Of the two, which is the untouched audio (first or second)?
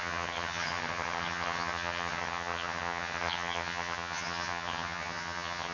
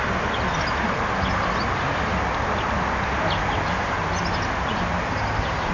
second